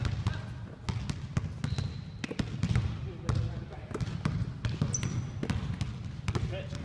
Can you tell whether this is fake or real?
real